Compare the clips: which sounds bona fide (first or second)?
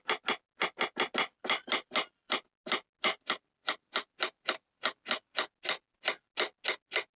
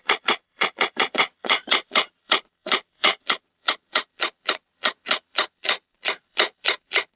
first